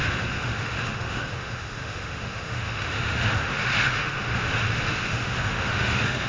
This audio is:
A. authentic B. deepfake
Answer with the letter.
B